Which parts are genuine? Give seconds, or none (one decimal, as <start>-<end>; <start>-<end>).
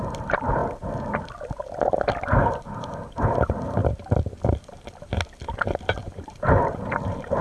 0.6-2.7; 3.8-4.6; 5.1-6.0